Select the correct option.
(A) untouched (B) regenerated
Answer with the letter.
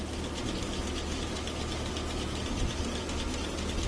A